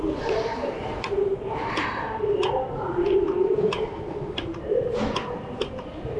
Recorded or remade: remade